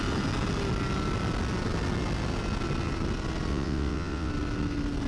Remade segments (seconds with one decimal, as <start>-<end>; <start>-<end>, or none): 3.5-4.3